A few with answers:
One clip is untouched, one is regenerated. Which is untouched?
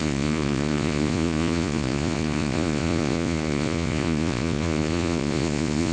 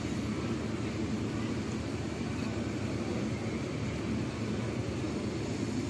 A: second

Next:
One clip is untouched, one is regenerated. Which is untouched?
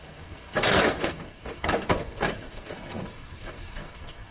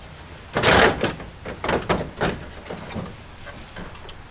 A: second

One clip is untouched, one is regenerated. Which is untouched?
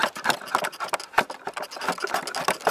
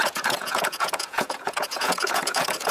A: first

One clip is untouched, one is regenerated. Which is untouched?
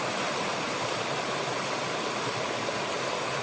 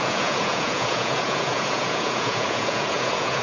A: first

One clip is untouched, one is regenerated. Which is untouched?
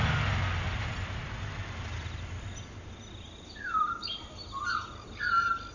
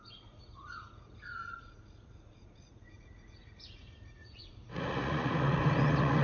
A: first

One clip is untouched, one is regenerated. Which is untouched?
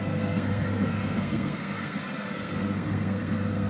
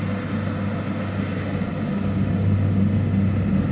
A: second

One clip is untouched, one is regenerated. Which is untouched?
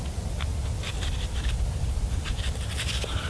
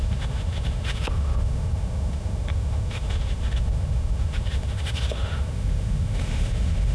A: first